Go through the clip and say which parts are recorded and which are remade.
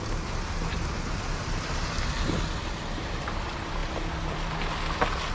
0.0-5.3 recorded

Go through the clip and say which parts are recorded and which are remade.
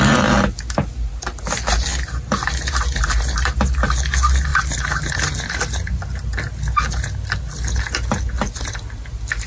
0.0-9.5 recorded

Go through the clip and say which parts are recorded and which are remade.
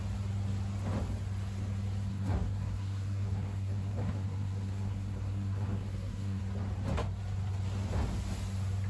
0.0-2.1 recorded; 2.1-6.4 remade; 6.4-8.9 recorded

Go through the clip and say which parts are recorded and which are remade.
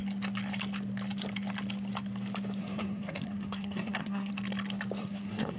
0.0-2.6 recorded; 2.6-4.3 remade; 4.3-5.0 recorded; 5.0-5.6 remade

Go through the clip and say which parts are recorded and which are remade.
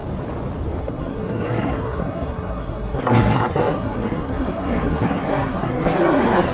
0.0-0.8 recorded; 0.8-6.5 remade